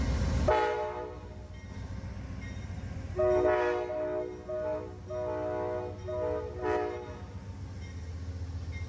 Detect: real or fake real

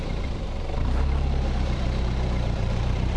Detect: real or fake fake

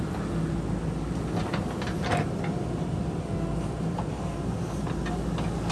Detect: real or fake real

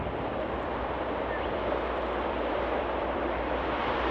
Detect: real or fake fake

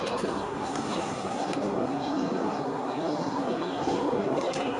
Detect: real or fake fake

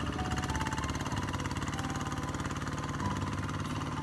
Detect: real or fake real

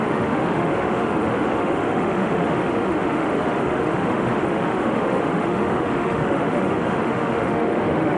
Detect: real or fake fake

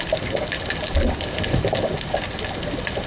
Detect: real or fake real